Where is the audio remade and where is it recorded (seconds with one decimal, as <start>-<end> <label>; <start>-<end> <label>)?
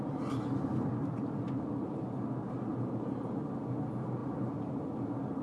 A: 0.0-0.7 recorded; 0.7-1.4 remade; 1.4-2.7 recorded; 2.7-3.2 remade; 3.2-4.2 recorded; 4.2-4.8 remade; 4.8-5.4 recorded